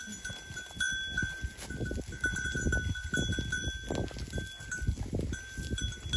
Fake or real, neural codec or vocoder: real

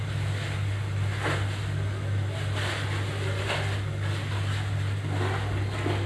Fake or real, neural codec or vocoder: real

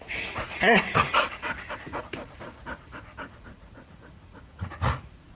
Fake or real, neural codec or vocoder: fake, vocoder, Vocos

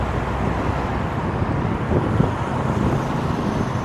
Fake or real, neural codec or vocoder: real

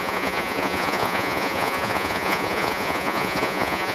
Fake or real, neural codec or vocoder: fake, vocoder, Vocos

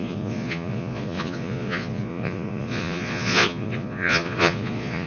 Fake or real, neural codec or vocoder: fake, vocoder, Vocos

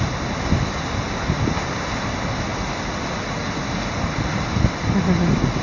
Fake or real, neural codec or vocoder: real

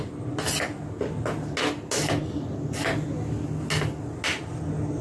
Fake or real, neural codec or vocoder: real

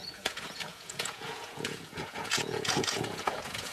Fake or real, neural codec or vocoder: fake, vocoder, Vocos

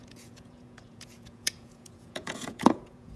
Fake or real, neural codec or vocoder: fake, vocoder, Vocos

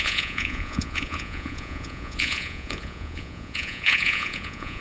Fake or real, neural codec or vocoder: fake, vocoder, Vocos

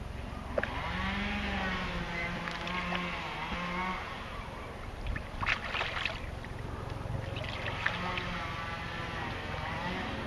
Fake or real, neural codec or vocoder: real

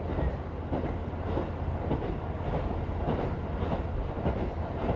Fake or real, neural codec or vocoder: real